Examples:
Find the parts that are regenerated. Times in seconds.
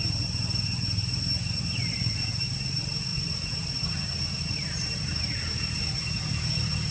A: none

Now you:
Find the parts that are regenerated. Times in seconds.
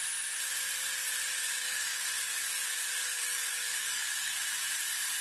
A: 1.4-4.4 (codec, DAC)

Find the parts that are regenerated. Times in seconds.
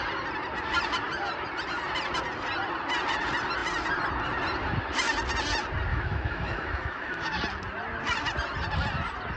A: 5.9-7.4 (autoencoder, DAC-VAE)